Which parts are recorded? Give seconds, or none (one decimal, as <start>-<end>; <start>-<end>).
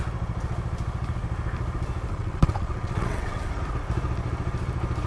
0.0-2.1; 3.5-5.1